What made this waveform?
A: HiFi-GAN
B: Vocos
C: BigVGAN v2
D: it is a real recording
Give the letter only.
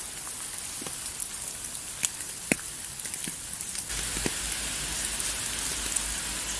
D